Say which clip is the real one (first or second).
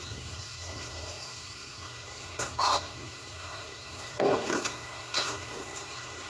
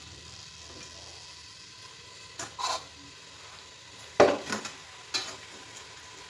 second